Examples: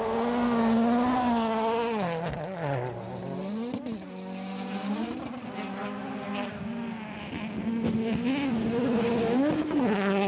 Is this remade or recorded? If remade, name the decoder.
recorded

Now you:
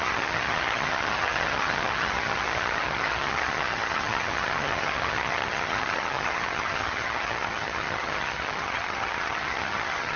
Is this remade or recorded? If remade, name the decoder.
remade, vocoder, HiFi-GAN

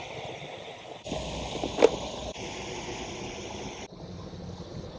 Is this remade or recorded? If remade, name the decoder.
recorded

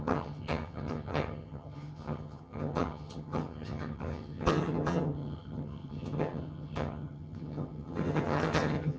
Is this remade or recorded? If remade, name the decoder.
remade, vocoder, HiFi-GAN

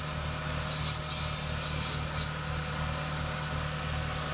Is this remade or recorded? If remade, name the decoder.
recorded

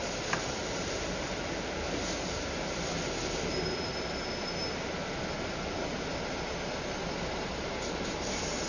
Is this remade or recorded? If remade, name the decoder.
recorded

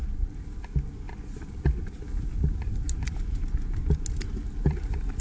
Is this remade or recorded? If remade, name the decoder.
recorded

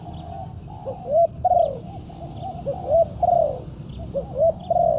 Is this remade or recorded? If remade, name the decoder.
recorded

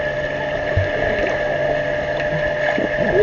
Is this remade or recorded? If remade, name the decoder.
recorded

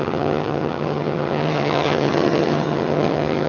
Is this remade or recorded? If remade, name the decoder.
remade, vocoder, HiFi-GAN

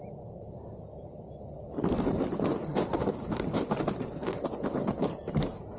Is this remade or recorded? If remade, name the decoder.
recorded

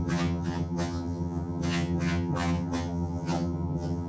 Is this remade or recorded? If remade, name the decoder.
remade, vocoder, HiFi-GAN